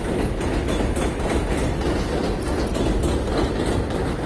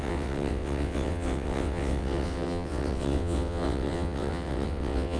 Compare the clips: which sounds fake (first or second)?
second